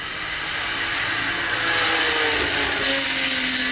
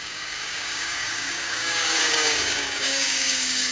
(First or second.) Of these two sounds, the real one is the first